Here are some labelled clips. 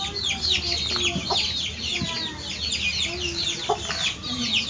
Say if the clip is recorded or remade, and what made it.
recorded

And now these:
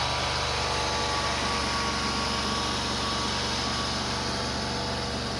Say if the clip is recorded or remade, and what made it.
recorded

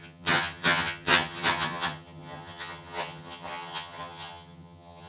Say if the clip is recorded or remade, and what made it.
remade, vocoder, HiFi-GAN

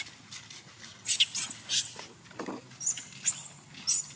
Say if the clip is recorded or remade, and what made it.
recorded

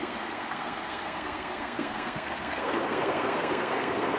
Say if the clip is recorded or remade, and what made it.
remade, codec, SNAC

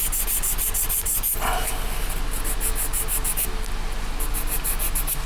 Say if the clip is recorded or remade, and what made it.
recorded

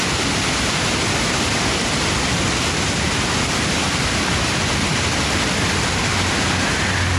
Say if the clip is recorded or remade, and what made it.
recorded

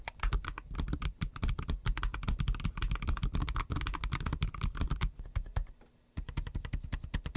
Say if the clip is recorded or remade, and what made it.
recorded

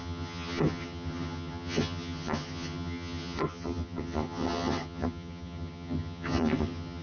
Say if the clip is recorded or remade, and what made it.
remade, vocoder, HiFi-GAN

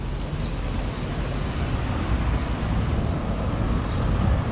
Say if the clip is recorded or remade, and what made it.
recorded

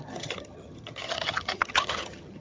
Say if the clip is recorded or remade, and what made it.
remade, vocoder, HiFi-GAN